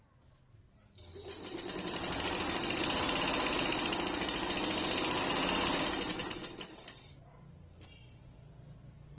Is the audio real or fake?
real